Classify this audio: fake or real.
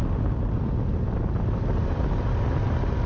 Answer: real